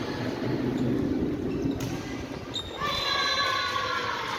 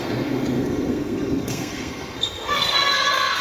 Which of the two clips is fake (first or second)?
second